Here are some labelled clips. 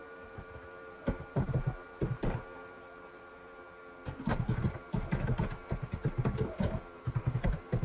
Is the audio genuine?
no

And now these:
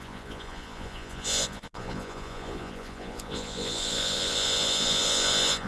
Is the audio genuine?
no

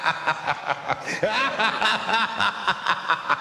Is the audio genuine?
no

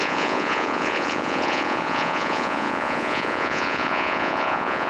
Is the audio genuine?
no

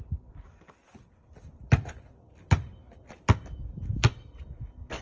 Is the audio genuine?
no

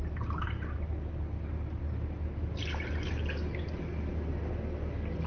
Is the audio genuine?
yes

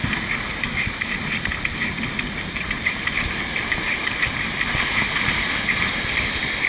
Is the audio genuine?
yes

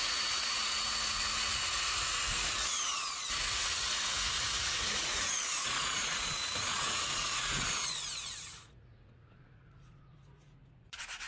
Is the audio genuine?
no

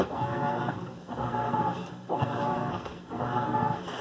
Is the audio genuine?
no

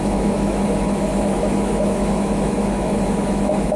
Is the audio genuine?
no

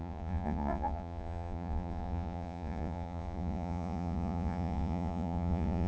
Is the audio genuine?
no